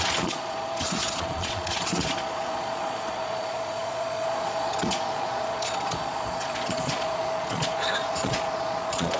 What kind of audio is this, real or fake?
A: fake